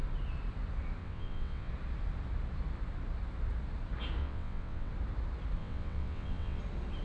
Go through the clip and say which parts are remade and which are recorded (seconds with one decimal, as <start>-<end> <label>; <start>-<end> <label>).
0.0-1.0 recorded; 1.0-1.7 remade; 1.7-4.2 recorded; 4.2-4.9 remade; 4.9-5.6 recorded; 5.6-6.6 remade; 6.6-7.0 recorded